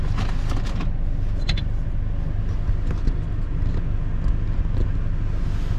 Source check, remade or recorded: recorded